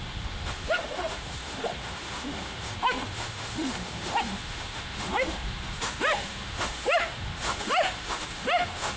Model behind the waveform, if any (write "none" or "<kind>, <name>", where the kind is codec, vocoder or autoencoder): autoencoder, DAC-VAE